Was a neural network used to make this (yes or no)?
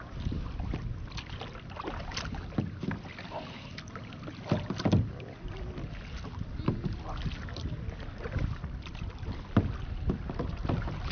no